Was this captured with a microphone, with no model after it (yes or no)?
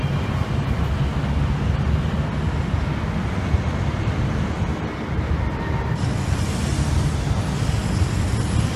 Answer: yes